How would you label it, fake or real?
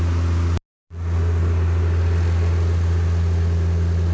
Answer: real